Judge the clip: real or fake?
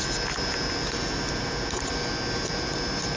real